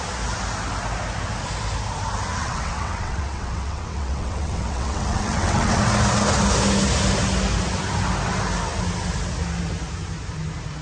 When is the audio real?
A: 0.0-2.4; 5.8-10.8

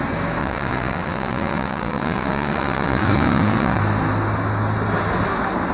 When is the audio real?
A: 0.0-0.4; 3.8-5.7

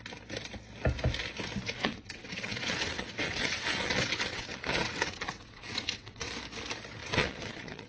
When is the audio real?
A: 0.0-1.6; 6.3-7.0

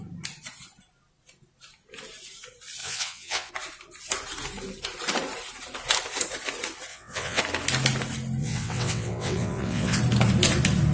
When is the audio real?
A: 0.0-2.8; 3.5-6.9; 7.4-8.4; 10.0-10.9

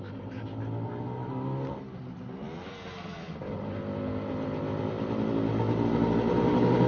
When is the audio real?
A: 0.0-6.9

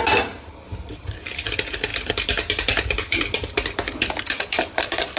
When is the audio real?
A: 0.0-5.2

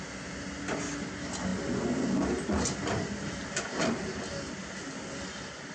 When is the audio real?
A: 0.0-5.7

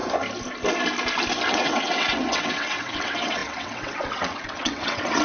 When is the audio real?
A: 0.0-1.5